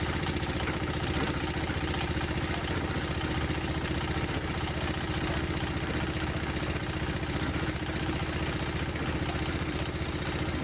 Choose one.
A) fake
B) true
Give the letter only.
B